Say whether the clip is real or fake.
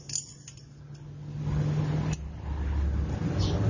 real